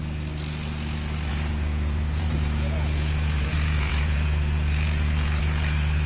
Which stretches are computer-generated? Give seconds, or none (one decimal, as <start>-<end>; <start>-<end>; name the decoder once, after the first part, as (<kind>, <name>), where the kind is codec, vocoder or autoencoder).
1.3-6.1 (vocoder, Vocos)